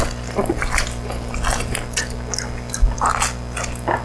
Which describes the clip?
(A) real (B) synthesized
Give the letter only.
A